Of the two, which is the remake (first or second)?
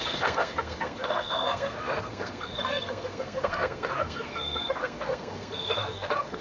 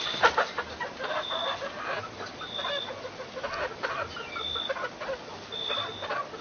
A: first